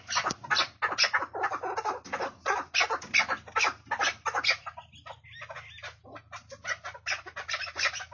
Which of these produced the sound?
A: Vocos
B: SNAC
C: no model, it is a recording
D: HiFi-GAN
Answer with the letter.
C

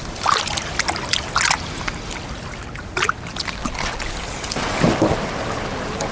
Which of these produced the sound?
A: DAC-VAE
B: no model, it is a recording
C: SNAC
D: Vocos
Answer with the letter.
B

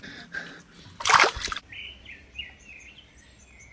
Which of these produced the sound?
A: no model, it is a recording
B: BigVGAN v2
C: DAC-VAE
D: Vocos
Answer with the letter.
A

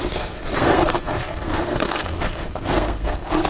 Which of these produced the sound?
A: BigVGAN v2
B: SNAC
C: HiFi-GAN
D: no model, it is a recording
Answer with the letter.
B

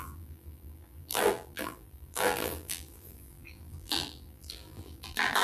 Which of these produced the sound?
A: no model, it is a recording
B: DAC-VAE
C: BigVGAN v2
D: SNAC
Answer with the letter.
C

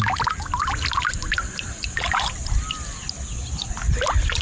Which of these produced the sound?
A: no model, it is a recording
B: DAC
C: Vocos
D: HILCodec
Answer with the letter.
A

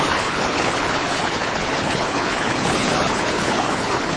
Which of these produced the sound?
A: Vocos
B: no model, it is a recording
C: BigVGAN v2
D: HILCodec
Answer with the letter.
D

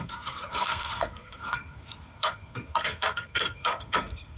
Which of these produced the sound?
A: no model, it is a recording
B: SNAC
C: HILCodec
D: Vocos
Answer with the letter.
B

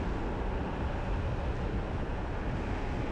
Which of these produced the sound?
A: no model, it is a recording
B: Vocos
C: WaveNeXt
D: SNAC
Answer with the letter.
A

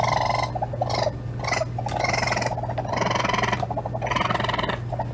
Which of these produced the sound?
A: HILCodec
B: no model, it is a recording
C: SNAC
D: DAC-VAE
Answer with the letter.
B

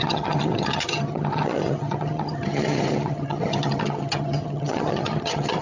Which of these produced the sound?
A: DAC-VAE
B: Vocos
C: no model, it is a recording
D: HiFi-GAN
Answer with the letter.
D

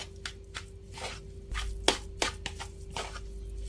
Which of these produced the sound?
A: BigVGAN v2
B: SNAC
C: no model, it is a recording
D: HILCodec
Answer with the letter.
C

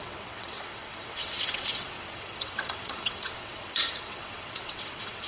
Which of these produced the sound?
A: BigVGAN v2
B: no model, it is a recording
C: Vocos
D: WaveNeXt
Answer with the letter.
D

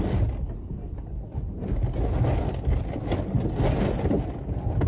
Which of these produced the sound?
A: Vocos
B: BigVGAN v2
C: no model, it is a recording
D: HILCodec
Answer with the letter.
C